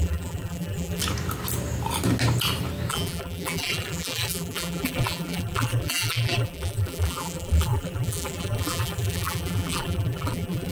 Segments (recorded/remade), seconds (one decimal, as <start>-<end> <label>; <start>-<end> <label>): 0.0-1.0 remade; 1.0-2.9 recorded; 2.9-10.7 remade